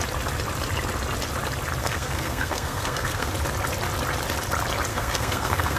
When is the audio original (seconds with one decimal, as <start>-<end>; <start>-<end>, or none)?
0.0-1.8; 3.3-4.9